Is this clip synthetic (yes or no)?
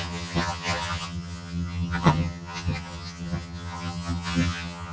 yes